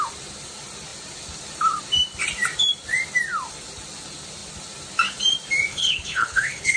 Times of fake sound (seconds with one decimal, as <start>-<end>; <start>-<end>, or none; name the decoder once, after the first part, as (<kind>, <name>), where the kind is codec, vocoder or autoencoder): 5.7-6.8 (codec, HILCodec)